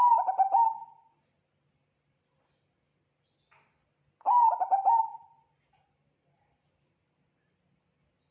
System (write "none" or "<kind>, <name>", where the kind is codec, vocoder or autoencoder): none